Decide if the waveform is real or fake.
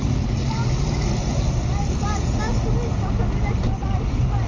real